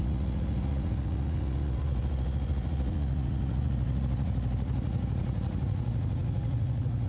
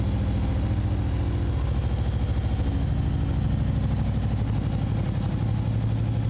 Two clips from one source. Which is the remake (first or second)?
first